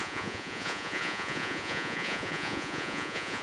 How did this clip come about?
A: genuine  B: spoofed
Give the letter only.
B